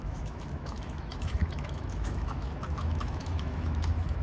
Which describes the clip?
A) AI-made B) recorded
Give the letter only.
A